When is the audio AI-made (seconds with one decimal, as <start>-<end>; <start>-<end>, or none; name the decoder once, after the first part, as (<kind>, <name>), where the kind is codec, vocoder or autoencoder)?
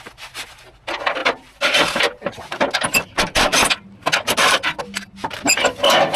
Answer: none